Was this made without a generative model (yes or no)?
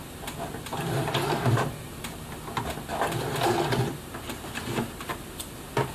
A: yes